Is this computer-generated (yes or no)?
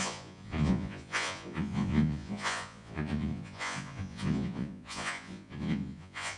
yes